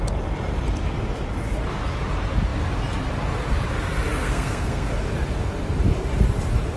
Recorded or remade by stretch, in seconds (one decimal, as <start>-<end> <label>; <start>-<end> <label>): 0.0-4.2 recorded; 4.2-4.9 remade; 4.9-6.8 recorded